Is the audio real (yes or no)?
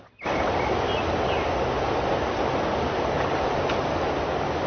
yes